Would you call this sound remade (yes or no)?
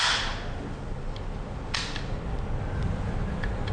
no